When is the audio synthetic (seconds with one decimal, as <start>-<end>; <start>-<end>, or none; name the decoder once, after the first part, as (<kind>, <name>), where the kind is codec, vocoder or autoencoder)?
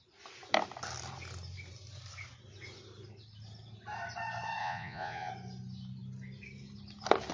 4.6-5.3 (vocoder, Vocos)